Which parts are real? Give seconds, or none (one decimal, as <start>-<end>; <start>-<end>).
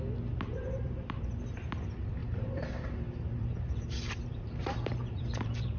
0.0-0.5; 1.4-2.2